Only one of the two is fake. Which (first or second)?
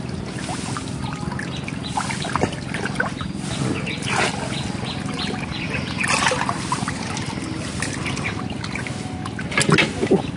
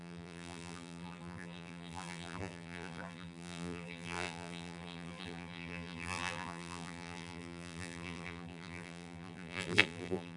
second